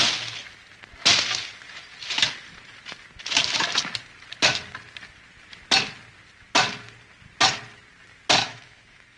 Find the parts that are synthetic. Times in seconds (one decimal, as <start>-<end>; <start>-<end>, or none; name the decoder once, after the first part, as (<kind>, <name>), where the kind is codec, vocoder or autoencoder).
8.4-9.2 (autoencoder, DAC-VAE)